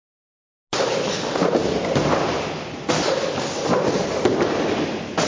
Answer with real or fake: real